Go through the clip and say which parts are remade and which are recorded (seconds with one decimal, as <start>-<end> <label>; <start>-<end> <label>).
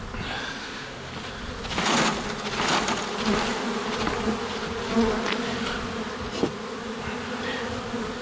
0.0-0.6 recorded; 0.6-1.1 remade; 1.1-8.2 recorded